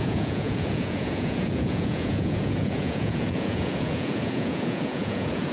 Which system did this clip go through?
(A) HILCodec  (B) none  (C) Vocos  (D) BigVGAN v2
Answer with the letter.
C